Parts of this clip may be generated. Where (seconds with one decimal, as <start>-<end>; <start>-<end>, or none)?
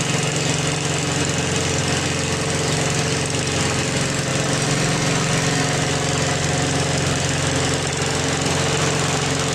none